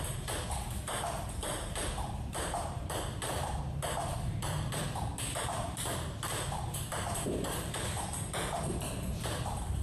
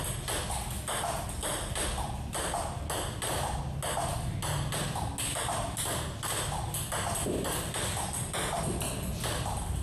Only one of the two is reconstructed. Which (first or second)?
first